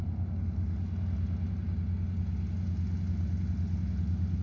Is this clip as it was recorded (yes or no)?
yes